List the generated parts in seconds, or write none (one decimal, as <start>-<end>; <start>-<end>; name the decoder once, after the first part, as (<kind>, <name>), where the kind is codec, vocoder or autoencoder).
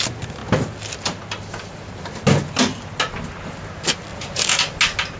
none